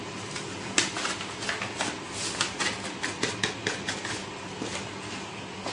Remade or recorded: recorded